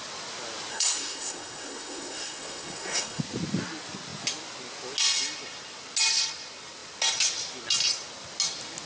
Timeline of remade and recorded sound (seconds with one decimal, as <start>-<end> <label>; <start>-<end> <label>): 0.0-0.7 recorded; 0.7-3.2 remade; 3.2-8.9 recorded